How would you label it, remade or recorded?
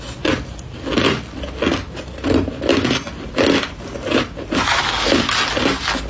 recorded